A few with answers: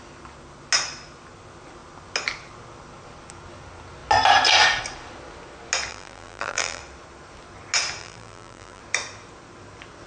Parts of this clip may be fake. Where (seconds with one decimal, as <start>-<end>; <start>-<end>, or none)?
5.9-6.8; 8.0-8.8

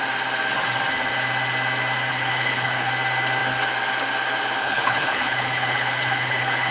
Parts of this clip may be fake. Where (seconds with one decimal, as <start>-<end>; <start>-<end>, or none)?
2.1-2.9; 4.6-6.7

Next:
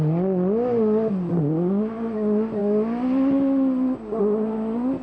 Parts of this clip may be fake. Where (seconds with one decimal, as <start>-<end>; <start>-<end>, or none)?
none